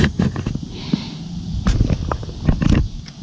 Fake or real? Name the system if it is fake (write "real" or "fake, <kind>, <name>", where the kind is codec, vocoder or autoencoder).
real